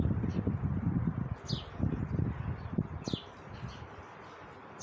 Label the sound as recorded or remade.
recorded